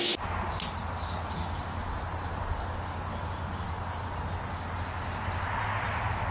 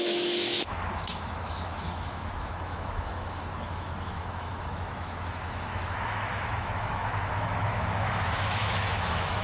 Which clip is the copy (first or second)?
second